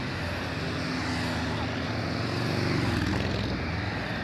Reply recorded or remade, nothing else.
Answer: recorded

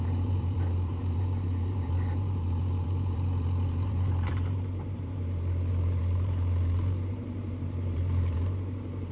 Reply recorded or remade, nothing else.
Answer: remade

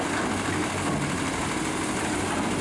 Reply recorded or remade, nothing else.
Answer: recorded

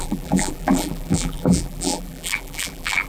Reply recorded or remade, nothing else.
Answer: remade